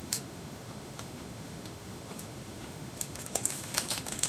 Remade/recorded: remade